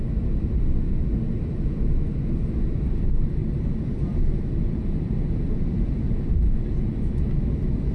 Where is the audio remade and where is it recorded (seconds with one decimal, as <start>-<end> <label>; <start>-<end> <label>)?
0.0-3.4 recorded; 3.4-7.0 remade; 7.0-7.9 recorded